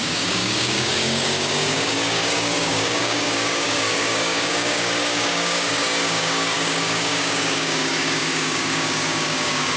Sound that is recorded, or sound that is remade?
remade